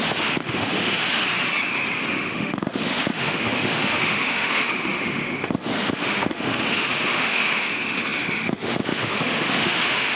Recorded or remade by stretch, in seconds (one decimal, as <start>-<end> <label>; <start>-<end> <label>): 0.0-1.2 remade; 1.2-2.1 recorded; 2.1-10.2 remade